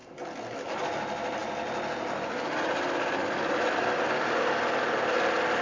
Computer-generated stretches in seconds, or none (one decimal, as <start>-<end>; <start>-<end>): none